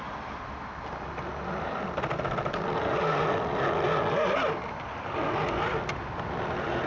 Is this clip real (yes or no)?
yes